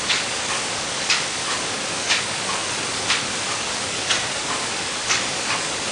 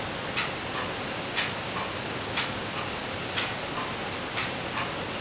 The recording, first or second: second